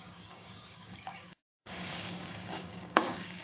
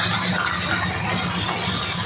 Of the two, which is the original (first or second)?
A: second